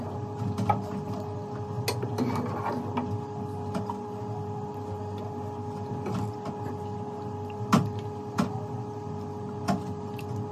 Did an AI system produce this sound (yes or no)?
no